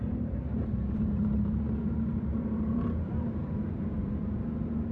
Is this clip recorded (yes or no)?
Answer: no